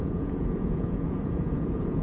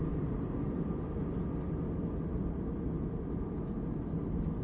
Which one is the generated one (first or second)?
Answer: first